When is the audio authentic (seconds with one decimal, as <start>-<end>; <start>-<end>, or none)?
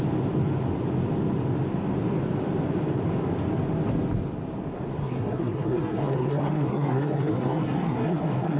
0.0-5.0